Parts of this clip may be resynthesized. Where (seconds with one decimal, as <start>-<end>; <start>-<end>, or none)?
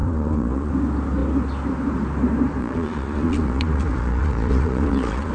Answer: 0.0-0.7; 2.6-5.3